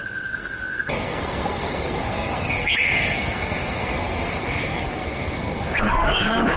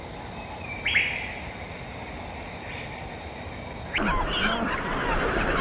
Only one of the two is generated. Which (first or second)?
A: first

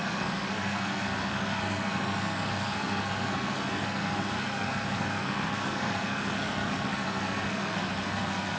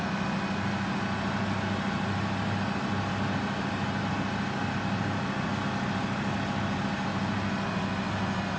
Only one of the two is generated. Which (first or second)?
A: first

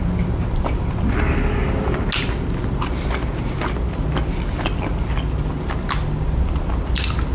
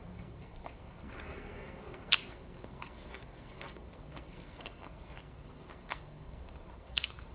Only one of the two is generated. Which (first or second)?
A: second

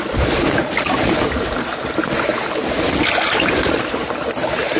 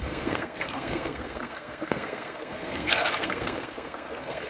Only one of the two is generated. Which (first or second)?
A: second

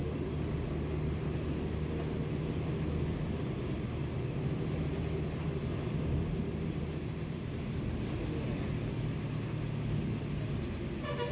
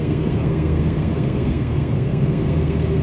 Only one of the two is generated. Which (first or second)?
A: second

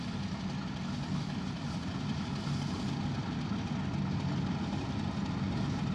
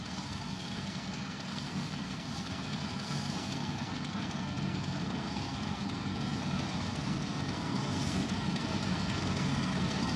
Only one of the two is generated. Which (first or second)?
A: second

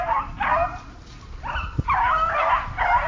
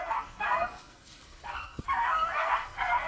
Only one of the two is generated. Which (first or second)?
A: second